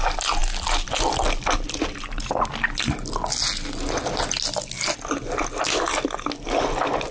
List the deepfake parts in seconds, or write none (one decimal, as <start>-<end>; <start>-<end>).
none